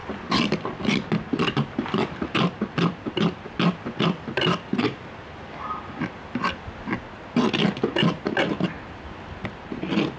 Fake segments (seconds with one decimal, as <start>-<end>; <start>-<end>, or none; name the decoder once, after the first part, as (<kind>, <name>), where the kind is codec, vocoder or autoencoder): none